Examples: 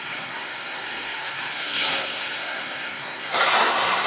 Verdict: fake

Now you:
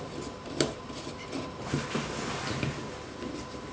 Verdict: real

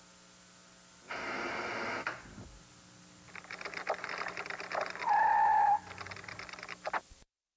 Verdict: real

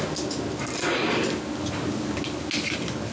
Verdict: real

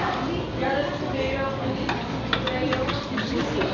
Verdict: real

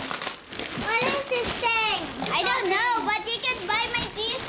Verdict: real